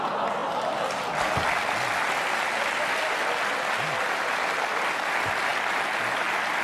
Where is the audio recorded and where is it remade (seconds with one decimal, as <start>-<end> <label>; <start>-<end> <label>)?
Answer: 0.0-6.6 recorded